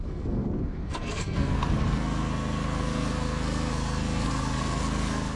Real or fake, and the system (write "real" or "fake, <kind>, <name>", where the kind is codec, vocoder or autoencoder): fake, codec, SNAC